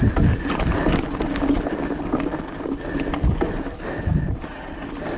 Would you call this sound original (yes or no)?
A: yes